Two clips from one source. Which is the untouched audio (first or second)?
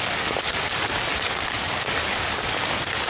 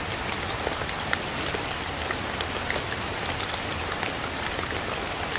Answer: second